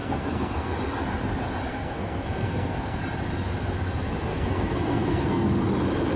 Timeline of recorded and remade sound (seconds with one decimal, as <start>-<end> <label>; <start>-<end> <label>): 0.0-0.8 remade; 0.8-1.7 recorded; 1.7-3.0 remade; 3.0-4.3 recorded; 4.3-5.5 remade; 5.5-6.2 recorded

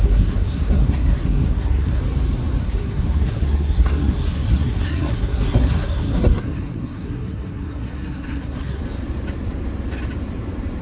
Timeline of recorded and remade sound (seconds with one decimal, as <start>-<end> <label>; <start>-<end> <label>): 0.0-2.0 remade; 2.0-2.6 recorded; 2.6-8.8 remade; 8.8-10.8 recorded

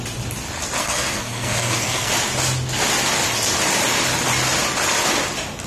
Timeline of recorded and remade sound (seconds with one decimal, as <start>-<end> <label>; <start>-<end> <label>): 0.0-0.8 recorded; 0.8-2.1 remade; 2.1-5.7 recorded

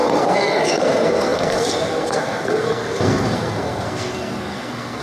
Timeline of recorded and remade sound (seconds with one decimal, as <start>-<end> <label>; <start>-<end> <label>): 0.0-5.0 remade

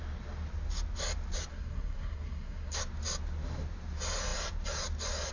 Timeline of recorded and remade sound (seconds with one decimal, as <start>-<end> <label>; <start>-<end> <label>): 0.0-1.5 recorded; 1.5-2.8 remade; 2.8-5.3 recorded

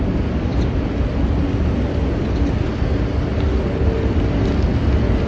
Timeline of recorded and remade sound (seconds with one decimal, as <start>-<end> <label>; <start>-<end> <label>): 0.0-5.3 recorded